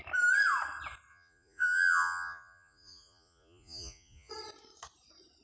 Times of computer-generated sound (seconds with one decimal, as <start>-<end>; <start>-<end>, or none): 1.1-4.3